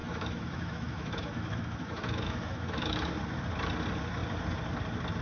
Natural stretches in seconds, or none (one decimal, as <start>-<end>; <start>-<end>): 3.1-5.2